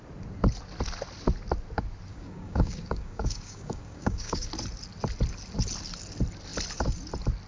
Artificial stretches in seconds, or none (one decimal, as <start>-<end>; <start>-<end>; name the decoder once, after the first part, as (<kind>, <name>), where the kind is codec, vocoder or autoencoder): 2.1-4.5 (codec, DAC)